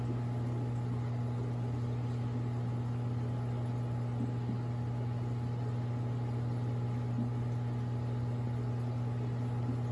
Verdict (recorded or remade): recorded